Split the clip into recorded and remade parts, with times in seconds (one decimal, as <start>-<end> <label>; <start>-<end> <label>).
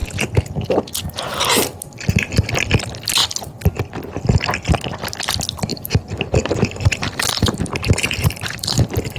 0.0-5.7 recorded; 5.7-9.2 remade